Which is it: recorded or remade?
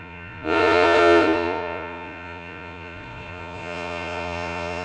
remade